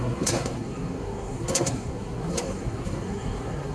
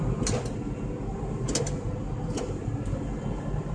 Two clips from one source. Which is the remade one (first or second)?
first